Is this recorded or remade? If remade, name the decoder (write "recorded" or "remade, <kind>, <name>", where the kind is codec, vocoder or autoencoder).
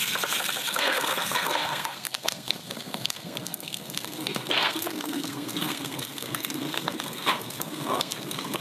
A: remade, codec, SNAC